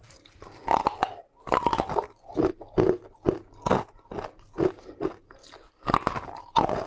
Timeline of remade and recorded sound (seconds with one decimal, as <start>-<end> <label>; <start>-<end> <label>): 0.0-0.6 remade; 0.6-4.7 recorded; 4.7-5.4 remade; 5.4-6.9 recorded

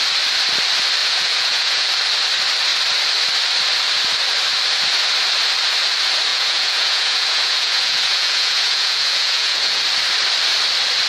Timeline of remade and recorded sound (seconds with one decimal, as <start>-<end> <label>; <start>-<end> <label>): 0.0-1.0 recorded; 1.0-1.9 remade; 1.9-6.3 recorded; 6.3-9.8 remade; 9.8-11.1 recorded